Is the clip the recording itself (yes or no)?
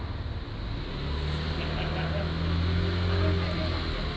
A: yes